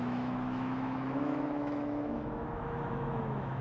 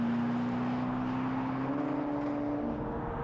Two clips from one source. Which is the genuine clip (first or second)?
second